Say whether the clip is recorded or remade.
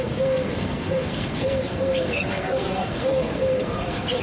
remade